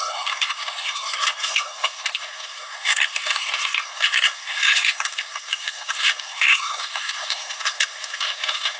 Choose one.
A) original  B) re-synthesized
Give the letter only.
B